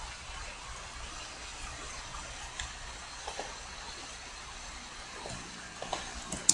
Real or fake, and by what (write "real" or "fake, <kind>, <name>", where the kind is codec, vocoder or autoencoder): real